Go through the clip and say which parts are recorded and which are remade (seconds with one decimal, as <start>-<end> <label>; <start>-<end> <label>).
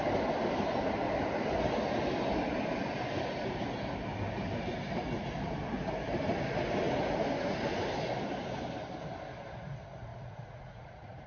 0.0-10.1 recorded; 10.1-11.3 remade